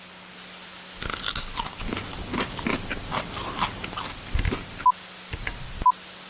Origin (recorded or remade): recorded